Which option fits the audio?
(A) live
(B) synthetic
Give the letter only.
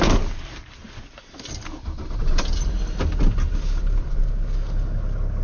A